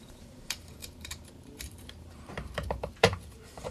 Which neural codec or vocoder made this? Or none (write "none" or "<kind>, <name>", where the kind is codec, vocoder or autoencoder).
vocoder, BigVGAN v2